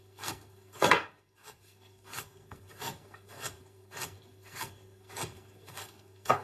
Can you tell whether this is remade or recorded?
remade